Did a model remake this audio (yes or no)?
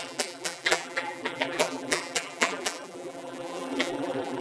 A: yes